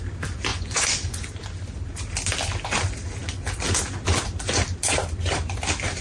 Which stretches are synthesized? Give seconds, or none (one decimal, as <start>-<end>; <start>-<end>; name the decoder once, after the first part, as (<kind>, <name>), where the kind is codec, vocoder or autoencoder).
0.5-1.3 (vocoder, Vocos)